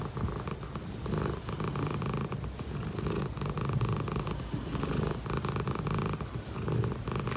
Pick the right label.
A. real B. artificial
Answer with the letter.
A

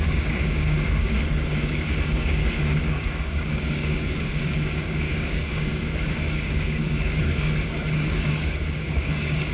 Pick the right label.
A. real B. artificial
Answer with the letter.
B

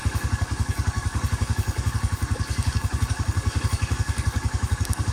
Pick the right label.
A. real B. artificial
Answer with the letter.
B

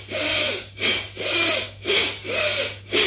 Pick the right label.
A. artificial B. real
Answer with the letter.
A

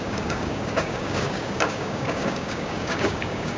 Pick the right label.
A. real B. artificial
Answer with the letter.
B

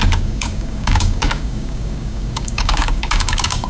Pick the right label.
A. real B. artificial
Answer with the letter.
B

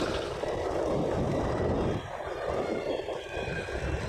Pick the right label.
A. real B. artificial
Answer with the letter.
A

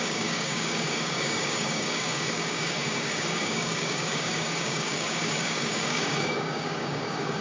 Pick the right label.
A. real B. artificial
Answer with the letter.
B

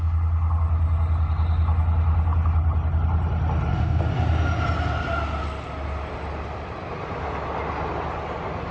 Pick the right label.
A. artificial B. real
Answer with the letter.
B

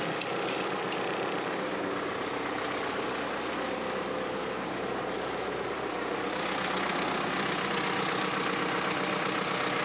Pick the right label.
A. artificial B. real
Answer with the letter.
B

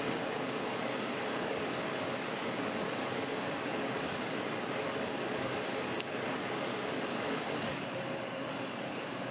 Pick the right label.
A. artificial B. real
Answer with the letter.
A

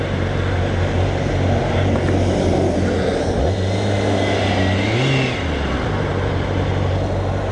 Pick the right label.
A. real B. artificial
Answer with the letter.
A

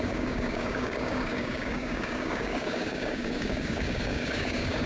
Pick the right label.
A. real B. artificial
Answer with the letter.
B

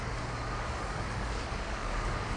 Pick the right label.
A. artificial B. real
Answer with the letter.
A